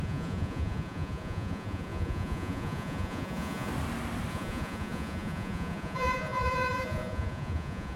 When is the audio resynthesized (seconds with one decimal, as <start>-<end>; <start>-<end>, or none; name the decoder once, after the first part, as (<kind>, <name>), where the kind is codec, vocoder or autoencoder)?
0.0-3.7 (vocoder, Vocos); 4.3-8.0

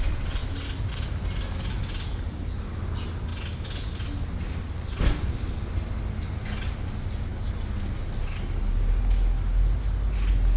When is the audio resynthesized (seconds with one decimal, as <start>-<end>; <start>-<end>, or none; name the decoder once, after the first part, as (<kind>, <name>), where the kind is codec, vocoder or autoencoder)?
none